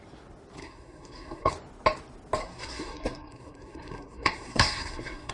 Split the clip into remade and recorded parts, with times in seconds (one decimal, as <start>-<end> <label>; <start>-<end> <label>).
0.0-0.6 recorded; 0.6-1.5 remade; 1.5-2.4 recorded; 2.4-5.3 remade